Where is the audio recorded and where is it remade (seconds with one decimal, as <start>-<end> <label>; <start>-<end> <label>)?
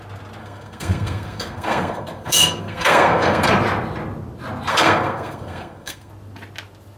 0.0-0.4 recorded; 0.4-3.5 remade; 3.5-4.7 recorded; 4.7-6.1 remade; 6.1-7.0 recorded